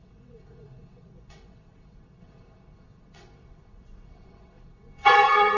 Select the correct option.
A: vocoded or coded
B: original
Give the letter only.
A